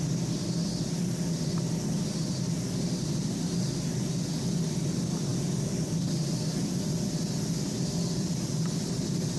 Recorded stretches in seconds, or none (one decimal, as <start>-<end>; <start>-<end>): 0.0-9.4

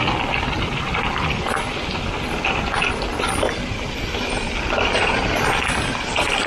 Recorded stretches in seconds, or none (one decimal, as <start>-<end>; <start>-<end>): 0.0-6.5